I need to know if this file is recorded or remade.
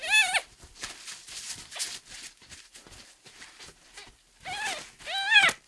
recorded